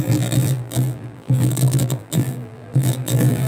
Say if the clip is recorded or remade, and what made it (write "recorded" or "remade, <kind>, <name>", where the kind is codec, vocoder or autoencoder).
remade, vocoder, BigVGAN v2